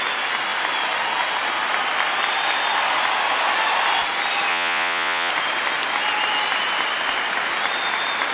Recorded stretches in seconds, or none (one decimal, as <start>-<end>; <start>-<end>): 0.0-4.5; 5.3-8.3